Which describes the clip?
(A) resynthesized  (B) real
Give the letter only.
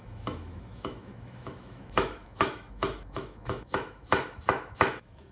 A